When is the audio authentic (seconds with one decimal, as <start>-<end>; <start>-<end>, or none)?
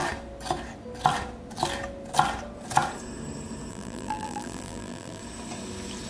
0.0-3.7; 5.2-6.1